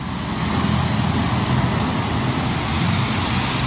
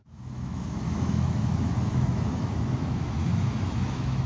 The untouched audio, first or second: first